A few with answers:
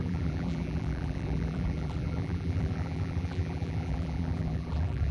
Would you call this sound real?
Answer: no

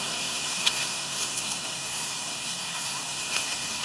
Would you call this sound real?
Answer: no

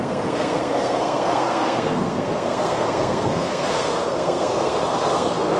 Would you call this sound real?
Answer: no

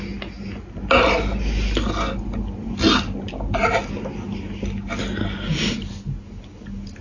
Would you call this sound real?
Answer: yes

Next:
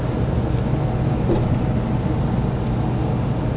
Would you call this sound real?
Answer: yes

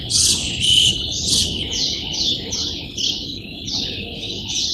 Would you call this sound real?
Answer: no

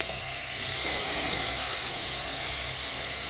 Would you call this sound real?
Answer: no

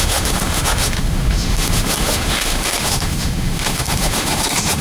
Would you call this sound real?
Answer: no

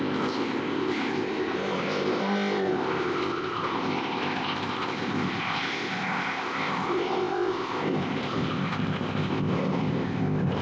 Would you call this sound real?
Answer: no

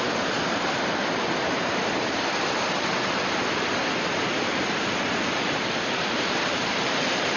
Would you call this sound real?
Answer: no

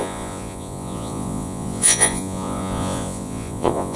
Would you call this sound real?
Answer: no